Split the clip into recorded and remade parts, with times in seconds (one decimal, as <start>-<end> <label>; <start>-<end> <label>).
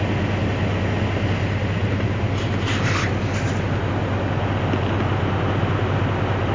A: 0.0-6.5 recorded